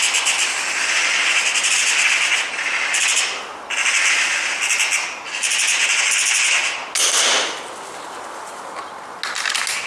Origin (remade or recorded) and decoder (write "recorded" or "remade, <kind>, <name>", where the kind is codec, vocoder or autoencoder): recorded